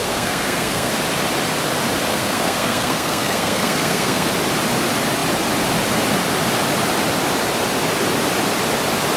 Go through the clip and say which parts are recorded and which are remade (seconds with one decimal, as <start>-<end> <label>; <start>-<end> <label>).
0.0-0.9 remade; 0.9-2.1 recorded; 2.1-4.3 remade; 4.3-9.2 recorded